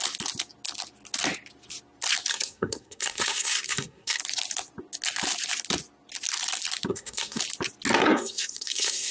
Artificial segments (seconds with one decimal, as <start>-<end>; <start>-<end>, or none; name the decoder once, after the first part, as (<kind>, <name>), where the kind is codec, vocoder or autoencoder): 2.3-4.2 (codec, SNAC); 6.9-7.4; 8.0-9.1